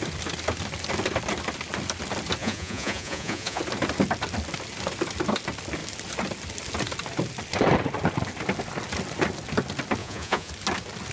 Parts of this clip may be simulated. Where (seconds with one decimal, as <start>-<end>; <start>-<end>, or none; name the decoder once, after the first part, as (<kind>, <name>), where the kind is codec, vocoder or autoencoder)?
2.4-3.6 (vocoder, Vocos); 10.0-10.5